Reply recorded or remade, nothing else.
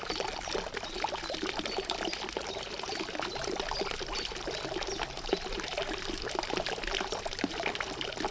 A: recorded